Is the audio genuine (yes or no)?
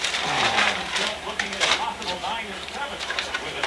no